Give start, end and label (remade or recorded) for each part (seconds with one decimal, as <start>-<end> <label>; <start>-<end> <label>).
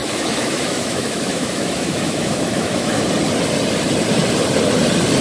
0.0-3.1 remade; 3.1-5.2 recorded